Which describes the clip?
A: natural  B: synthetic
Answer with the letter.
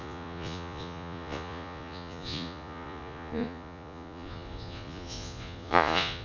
B